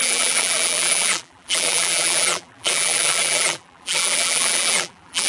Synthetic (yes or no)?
yes